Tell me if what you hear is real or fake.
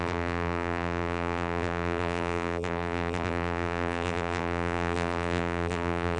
fake